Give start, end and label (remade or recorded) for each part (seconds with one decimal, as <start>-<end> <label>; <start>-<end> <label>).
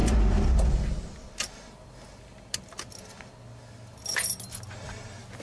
0.0-5.4 recorded